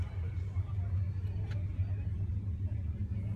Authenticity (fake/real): real